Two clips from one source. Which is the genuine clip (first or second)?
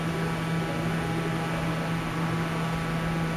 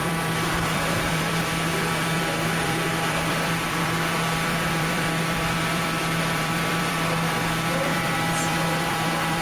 first